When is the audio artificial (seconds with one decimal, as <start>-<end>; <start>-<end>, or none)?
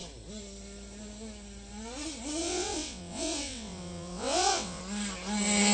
2.4-4.8